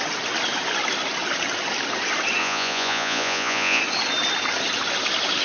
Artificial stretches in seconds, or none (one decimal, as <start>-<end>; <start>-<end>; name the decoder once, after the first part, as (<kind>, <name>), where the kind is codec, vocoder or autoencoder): 2.4-3.8 (vocoder, Vocos)